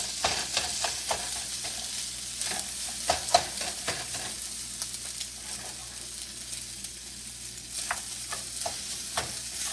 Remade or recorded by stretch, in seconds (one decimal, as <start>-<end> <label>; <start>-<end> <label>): 0.0-9.7 recorded